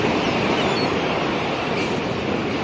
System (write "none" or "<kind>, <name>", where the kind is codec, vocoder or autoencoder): none